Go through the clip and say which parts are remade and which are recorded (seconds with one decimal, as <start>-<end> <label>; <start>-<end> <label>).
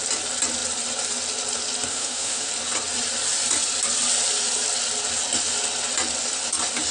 0.0-1.9 recorded; 1.9-2.5 remade; 2.5-6.9 recorded